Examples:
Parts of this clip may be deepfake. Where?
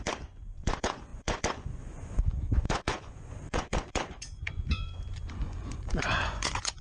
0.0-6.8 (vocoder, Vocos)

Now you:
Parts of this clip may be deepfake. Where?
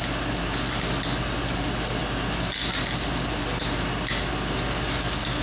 none